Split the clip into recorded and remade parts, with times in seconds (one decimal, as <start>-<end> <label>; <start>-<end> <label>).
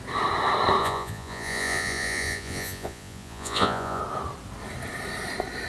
0.0-0.8 recorded; 0.8-4.0 remade; 4.0-5.7 recorded